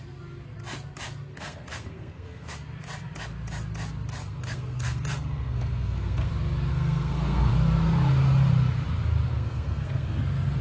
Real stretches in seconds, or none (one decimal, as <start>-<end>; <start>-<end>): 0.0-1.3; 2.5-4.2; 6.3-6.7; 7.5-9.3; 10.2-10.6